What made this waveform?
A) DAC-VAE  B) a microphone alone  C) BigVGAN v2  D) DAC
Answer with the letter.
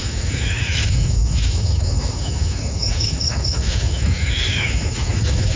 A